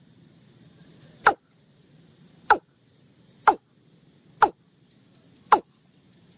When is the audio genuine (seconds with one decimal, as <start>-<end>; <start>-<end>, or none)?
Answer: 3.5-5.5